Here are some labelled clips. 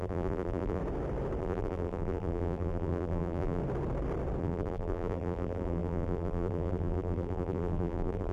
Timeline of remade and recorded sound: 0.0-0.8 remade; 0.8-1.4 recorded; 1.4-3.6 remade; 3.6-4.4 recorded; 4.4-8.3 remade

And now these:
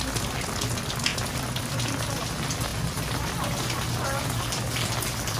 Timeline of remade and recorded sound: 0.0-5.4 recorded